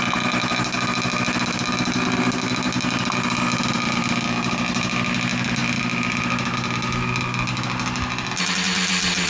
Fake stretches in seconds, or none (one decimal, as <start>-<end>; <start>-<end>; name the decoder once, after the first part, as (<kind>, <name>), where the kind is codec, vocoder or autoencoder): none